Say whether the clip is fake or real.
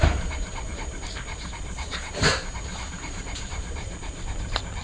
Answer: fake